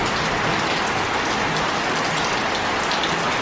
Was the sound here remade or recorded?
recorded